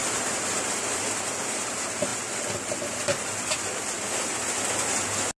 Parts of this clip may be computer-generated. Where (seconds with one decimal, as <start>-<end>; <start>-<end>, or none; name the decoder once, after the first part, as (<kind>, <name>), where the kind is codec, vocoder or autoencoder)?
0.0-0.7 (vocoder, BigVGAN v2)